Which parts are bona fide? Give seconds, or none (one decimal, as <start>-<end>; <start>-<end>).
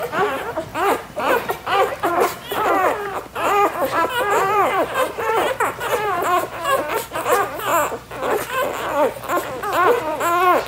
7.7-10.7